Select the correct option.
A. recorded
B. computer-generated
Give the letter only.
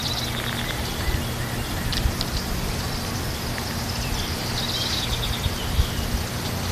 A